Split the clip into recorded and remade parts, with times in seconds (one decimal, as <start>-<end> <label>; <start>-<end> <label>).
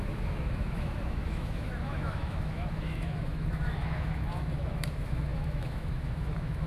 0.0-6.7 remade